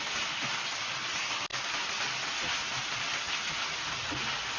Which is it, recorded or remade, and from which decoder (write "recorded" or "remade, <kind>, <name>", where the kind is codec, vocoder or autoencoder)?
recorded